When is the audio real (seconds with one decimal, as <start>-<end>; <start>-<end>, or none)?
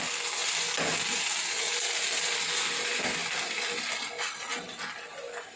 0.0-3.2; 4.1-5.6